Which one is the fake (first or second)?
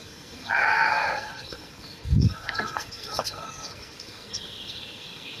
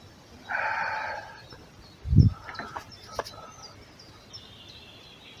first